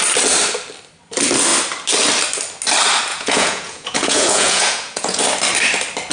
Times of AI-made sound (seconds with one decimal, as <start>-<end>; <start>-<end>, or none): 3.1-5.2